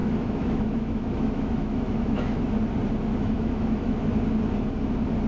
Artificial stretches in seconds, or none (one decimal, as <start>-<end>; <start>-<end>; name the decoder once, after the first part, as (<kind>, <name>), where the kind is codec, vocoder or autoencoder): 0.0-2.6 (autoencoder, DAC-VAE); 3.1-4.1